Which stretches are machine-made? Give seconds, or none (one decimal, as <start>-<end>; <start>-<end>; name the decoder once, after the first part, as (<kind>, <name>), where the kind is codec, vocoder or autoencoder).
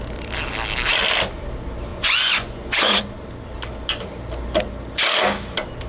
1.9-3.0 (vocoder, Vocos)